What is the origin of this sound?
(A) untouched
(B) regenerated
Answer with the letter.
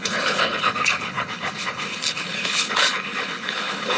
B